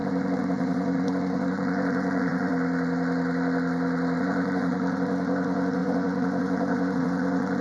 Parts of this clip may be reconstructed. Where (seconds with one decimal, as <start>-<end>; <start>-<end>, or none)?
0.0-2.5; 4.2-7.6

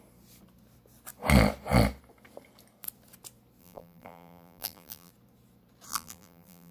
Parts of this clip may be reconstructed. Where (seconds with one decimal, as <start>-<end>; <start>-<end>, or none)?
3.6-5.1; 5.9-6.7